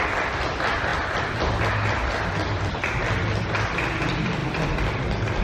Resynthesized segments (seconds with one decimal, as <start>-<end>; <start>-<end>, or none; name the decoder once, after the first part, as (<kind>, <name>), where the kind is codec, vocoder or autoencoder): 4.4-5.4 (vocoder, BigVGAN v2)